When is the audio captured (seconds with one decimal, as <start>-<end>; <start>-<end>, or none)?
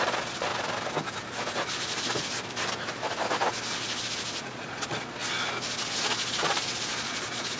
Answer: 0.5-4.4; 5.2-6.0